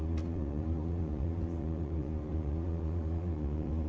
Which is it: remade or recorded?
remade